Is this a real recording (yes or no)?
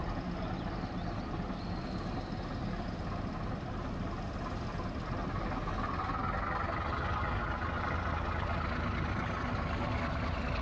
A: yes